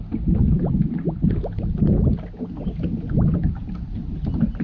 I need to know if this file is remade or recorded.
recorded